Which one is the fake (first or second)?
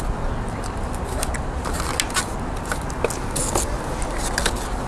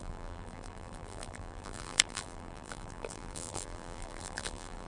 second